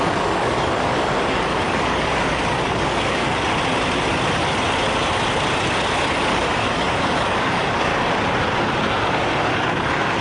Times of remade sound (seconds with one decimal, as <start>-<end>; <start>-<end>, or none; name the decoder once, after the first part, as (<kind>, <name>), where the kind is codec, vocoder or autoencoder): 0.0-3.2 (codec, DAC); 6.2-7.9; 9.1-10.2